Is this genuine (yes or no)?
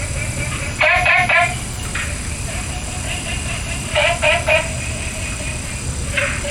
no